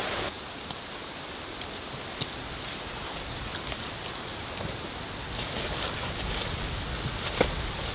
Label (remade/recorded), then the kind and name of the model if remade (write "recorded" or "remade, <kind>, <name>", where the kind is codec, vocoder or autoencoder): recorded